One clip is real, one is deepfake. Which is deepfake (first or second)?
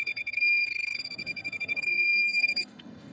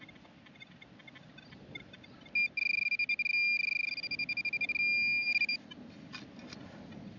first